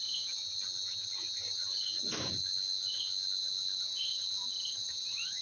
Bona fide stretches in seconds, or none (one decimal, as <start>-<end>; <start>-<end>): 0.0-5.4